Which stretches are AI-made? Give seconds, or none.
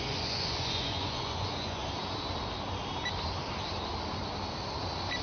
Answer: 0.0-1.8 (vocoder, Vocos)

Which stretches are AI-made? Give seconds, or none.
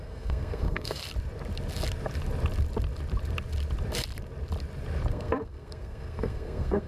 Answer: 0.0-1.0 (codec, SNAC); 5.1-6.9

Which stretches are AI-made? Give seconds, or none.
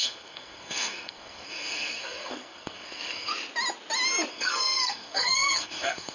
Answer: 0.0-3.3 (codec, SNAC); 4.3-6.1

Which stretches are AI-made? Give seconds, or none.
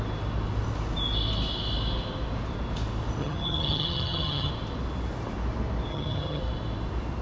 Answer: 3.2-4.5 (vocoder, HiFi-GAN); 5.9-6.4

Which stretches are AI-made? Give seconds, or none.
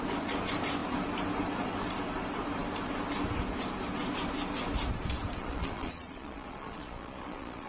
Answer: 5.4-7.7 (vocoder, Vocos)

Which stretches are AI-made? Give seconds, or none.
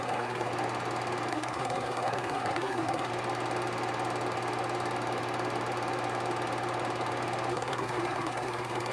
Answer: 0.0-0.5 (codec, SNAC); 1.3-3.1; 7.5-8.9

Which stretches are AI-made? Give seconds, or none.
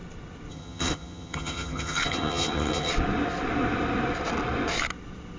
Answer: 0.5-2.9 (vocoder, HiFi-GAN)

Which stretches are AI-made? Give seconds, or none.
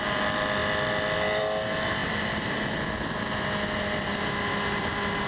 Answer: none